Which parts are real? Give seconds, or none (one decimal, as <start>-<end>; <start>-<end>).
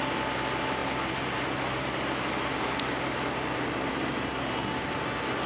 0.0-5.5